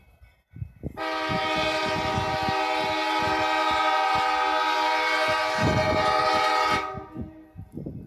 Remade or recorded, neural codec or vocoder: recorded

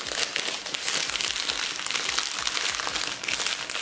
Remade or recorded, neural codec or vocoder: recorded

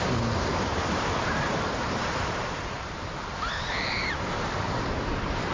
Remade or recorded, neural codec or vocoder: remade, vocoder, BigVGAN v2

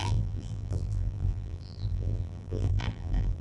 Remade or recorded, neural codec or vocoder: remade, vocoder, BigVGAN v2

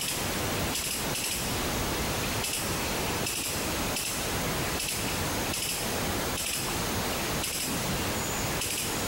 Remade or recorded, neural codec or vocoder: recorded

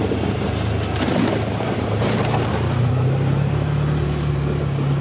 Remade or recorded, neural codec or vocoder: remade, vocoder, BigVGAN v2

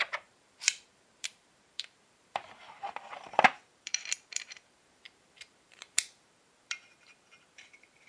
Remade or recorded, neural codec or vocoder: remade, vocoder, BigVGAN v2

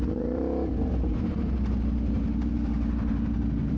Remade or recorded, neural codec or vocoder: remade, vocoder, BigVGAN v2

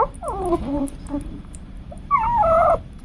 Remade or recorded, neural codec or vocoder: remade, vocoder, BigVGAN v2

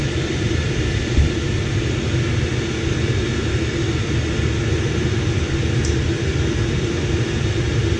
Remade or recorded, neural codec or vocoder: recorded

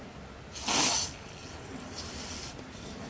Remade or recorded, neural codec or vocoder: recorded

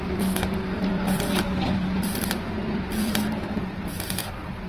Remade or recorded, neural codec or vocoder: remade, vocoder, BigVGAN v2